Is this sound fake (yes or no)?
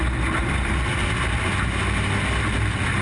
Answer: no